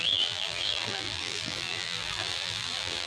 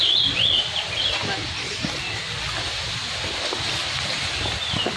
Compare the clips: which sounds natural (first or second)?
second